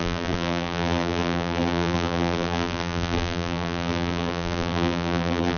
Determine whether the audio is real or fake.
fake